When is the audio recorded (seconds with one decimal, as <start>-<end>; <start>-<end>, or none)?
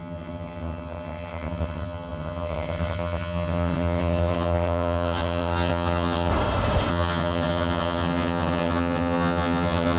6.3-6.9